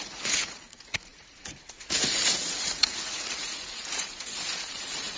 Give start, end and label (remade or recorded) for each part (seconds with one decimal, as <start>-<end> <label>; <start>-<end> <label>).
0.0-5.2 remade